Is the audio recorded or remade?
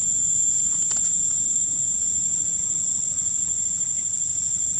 recorded